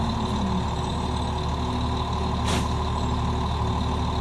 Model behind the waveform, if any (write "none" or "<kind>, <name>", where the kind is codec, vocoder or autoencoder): none